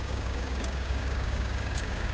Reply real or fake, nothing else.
fake